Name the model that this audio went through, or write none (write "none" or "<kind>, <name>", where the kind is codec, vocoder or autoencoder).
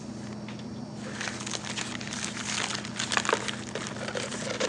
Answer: none